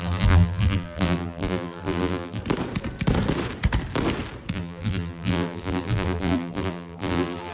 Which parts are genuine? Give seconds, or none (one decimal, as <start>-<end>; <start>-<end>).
2.4-4.5